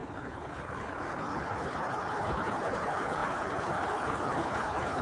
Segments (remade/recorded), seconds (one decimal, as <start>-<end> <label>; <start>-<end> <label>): 0.0-5.0 remade